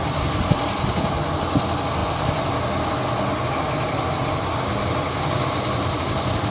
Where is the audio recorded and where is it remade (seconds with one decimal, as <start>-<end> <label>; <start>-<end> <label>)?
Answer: 0.0-6.5 recorded